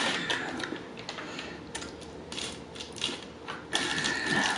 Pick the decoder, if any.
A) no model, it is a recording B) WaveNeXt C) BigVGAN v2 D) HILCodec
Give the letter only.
A